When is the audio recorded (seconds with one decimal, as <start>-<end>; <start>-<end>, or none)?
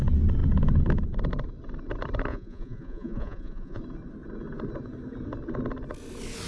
0.0-2.3; 3.8-6.5